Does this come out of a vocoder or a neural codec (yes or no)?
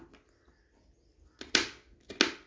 no